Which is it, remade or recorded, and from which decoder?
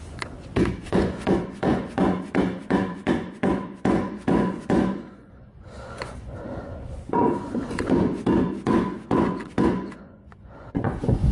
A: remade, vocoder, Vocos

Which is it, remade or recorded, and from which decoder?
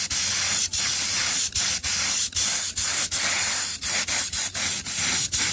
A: recorded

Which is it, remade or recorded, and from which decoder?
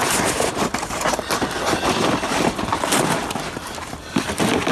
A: recorded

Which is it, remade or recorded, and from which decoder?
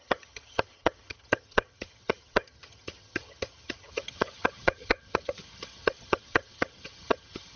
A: remade, vocoder, HiFi-GAN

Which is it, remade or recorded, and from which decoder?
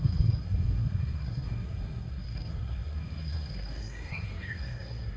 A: remade, codec, SNAC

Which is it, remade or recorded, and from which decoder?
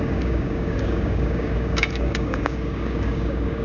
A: remade, codec, DAC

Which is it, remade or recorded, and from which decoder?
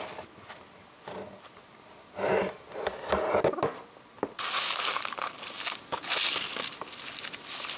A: recorded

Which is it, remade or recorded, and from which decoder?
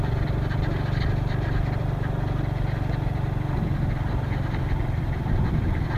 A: recorded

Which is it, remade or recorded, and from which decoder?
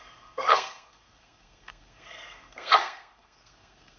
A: remade, codec, SNAC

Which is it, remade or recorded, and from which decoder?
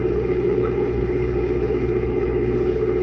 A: remade, codec, HILCodec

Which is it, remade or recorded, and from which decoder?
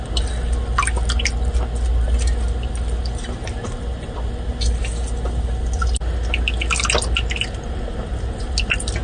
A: recorded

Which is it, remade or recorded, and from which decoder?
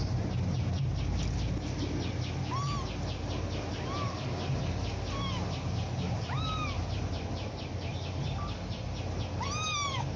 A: recorded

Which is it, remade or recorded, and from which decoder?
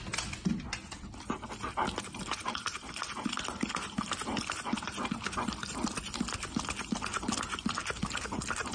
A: recorded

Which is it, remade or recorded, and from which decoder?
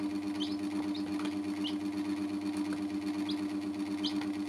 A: recorded